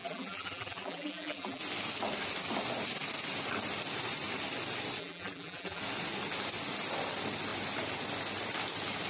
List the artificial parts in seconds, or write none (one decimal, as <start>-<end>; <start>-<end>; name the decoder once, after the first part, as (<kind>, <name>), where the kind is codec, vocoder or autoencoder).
0.0-1.6 (vocoder, BigVGAN v2); 5.0-5.8